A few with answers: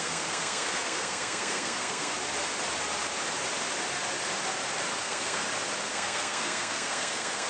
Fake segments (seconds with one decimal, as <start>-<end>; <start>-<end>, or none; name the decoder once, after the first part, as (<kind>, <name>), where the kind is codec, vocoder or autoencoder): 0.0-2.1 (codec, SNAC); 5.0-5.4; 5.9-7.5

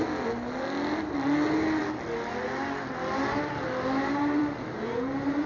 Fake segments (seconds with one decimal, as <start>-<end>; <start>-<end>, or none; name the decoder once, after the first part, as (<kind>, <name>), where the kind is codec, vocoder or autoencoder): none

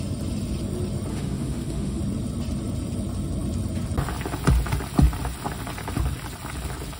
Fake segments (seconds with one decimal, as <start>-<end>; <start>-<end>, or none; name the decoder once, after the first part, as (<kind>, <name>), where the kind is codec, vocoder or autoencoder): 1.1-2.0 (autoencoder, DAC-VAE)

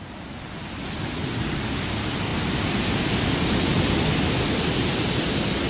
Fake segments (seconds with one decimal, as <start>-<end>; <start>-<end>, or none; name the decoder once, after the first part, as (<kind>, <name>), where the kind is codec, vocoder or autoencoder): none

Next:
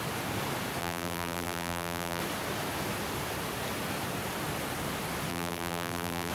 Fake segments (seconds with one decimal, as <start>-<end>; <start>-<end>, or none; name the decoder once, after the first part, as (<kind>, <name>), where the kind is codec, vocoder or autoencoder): 0.8-2.2 (vocoder, BigVGAN v2); 5.3-6.3

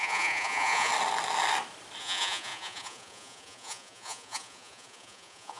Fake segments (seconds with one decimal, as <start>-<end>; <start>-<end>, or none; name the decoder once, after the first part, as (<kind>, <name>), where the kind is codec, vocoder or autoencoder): 0.0-0.9 (vocoder, Vocos); 2.0-5.6